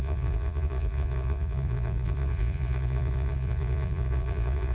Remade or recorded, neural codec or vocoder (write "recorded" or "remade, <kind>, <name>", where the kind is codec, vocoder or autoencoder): remade, vocoder, Vocos